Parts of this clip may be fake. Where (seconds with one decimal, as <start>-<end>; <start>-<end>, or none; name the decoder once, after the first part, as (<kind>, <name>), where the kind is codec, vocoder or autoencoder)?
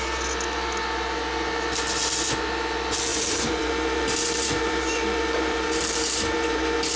3.1-6.6 (vocoder, BigVGAN v2)